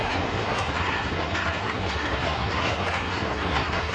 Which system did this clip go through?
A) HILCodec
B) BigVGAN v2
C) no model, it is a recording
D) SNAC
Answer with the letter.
D